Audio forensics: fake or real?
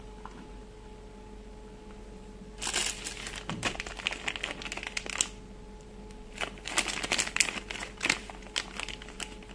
real